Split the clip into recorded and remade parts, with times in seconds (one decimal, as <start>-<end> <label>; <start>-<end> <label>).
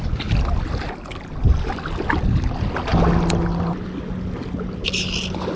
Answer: 0.0-5.6 recorded